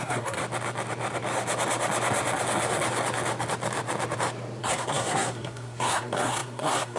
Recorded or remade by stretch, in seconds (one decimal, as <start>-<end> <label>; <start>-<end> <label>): 0.0-0.4 remade; 0.4-4.6 recorded; 4.6-7.0 remade